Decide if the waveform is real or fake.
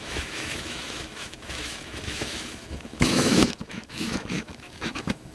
fake